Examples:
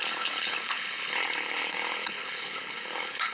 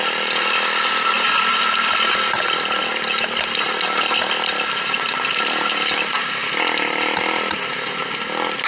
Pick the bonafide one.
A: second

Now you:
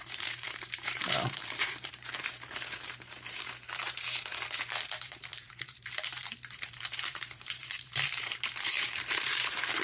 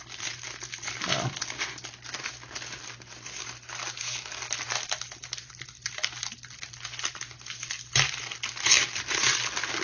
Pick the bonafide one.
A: second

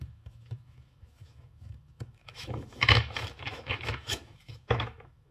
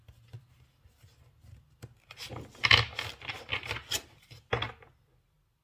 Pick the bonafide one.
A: second